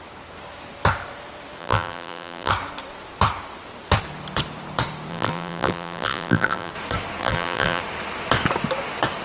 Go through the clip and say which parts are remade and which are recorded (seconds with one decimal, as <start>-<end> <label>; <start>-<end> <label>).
0.0-1.6 recorded; 1.6-2.5 remade; 2.5-5.1 recorded; 5.1-6.7 remade; 6.7-7.2 recorded; 7.2-7.8 remade; 7.8-9.2 recorded